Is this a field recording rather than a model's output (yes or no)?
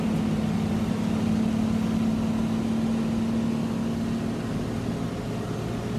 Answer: yes